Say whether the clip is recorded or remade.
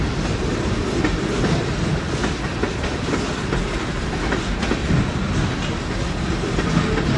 recorded